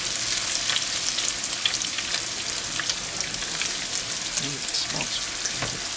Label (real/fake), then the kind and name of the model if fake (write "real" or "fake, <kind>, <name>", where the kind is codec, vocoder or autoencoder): real